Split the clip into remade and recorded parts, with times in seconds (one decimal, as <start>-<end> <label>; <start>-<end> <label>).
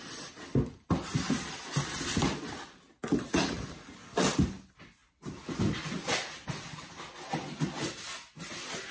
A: 0.0-8.9 recorded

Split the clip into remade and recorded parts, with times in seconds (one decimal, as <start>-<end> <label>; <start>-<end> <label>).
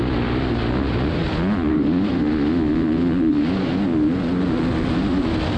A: 0.0-5.6 recorded